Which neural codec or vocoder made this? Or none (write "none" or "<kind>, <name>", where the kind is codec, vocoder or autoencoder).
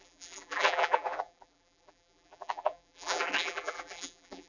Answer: vocoder, BigVGAN v2